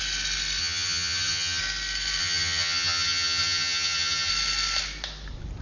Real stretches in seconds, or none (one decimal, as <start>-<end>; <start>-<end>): 0.0-0.6; 1.6-2.2; 4.3-5.6